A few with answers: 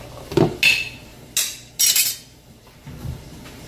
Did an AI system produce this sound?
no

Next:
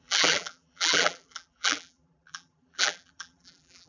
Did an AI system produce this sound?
yes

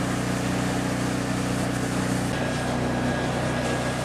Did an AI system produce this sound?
no